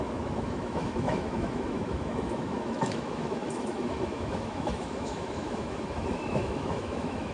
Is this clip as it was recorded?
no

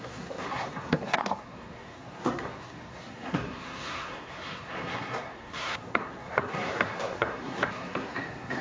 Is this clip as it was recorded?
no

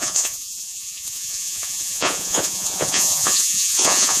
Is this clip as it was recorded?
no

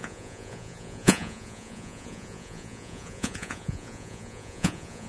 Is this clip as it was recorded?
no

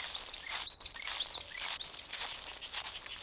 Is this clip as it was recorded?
yes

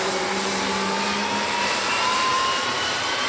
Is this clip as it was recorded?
no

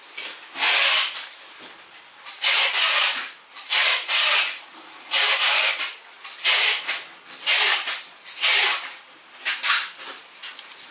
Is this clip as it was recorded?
no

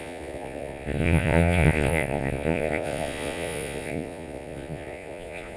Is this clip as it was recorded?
no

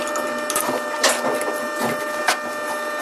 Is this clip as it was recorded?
yes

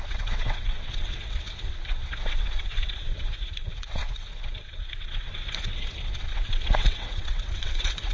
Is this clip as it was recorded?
no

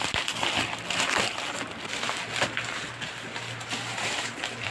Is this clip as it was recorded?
no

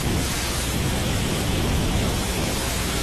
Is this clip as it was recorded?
no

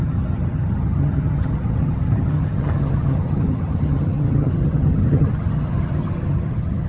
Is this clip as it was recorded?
no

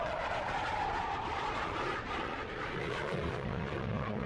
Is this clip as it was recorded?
no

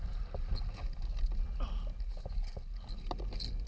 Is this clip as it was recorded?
yes